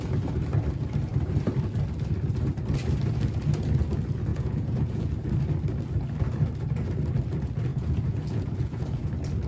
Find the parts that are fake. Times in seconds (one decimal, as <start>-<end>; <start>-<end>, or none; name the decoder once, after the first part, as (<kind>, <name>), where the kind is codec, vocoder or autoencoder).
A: 4.3-5.1 (vocoder, Vocos); 7.7-9.1